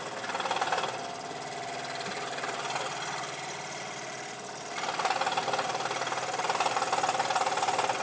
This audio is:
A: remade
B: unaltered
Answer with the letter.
B